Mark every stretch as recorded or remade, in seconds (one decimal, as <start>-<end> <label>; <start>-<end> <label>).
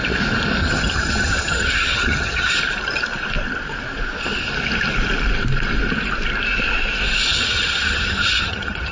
0.0-0.6 recorded; 0.6-2.5 remade; 2.5-7.3 recorded; 7.3-8.9 remade